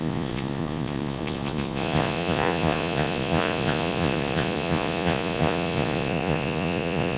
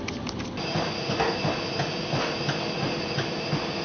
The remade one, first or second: first